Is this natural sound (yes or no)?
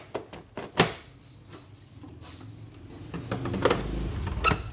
yes